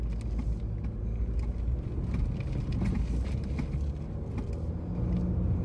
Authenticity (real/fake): real